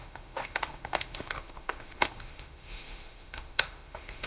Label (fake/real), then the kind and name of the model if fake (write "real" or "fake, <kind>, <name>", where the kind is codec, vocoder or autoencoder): fake, autoencoder, DAC-VAE